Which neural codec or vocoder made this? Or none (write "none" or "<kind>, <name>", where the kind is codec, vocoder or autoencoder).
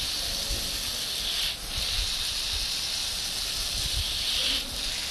none